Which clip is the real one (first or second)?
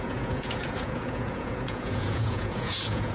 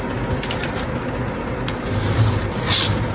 second